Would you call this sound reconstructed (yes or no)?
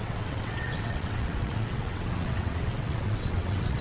yes